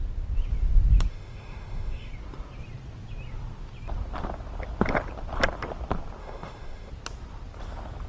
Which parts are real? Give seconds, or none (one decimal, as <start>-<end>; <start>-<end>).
0.0-1.1; 2.1-6.2; 6.9-8.1